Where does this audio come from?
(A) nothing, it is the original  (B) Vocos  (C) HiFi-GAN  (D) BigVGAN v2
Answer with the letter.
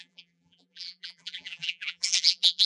D